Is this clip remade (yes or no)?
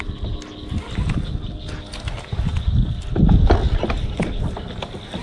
no